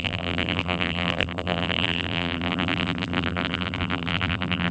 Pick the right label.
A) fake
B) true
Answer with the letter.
A